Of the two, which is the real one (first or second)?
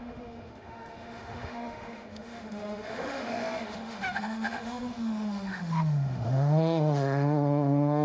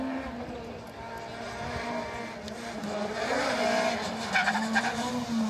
second